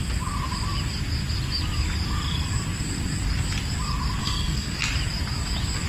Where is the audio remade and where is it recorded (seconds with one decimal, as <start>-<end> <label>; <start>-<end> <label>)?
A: 0.0-4.2 recorded; 4.2-4.8 remade; 4.8-5.9 recorded